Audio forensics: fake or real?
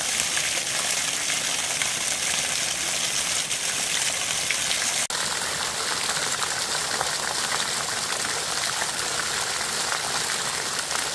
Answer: real